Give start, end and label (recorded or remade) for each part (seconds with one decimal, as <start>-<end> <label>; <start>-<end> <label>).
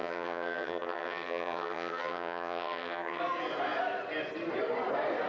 0.0-3.2 remade; 3.2-5.3 recorded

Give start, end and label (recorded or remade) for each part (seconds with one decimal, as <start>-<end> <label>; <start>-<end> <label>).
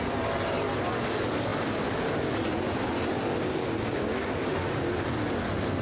0.0-5.8 recorded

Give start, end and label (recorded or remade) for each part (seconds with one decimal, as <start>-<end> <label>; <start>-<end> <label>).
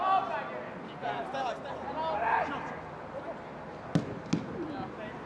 0.0-5.3 recorded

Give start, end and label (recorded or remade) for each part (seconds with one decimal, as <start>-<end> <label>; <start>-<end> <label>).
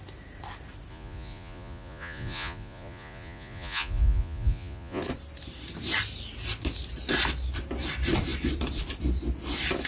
0.0-0.9 recorded; 0.9-5.0 remade; 5.0-9.9 recorded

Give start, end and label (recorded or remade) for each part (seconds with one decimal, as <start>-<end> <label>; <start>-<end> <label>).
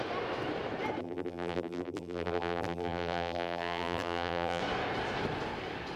0.0-1.0 recorded; 1.0-4.6 remade; 4.6-6.0 recorded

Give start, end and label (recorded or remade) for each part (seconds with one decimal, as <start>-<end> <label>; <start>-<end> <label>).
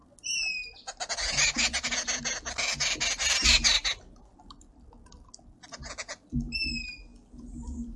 0.0-8.0 recorded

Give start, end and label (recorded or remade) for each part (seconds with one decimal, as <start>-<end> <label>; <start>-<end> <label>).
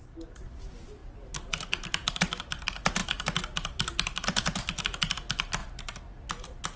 0.0-6.8 recorded